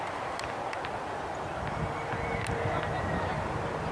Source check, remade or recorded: recorded